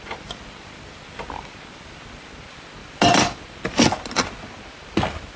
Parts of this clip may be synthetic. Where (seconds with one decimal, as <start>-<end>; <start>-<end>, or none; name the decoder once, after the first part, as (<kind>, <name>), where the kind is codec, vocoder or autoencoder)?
none